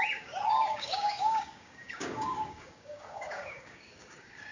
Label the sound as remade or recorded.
remade